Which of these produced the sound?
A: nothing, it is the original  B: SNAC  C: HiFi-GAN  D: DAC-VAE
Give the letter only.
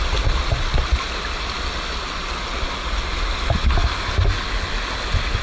A